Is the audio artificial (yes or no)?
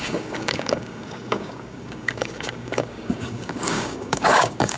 yes